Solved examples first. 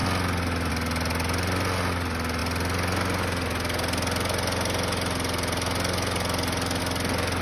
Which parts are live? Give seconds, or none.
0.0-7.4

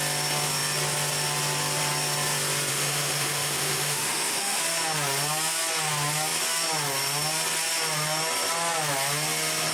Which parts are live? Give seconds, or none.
0.0-2.7; 4.6-9.7

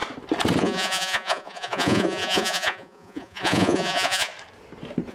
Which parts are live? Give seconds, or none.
0.0-0.6; 4.3-5.1